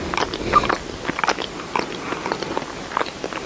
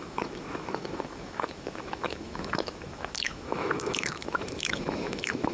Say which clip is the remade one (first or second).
second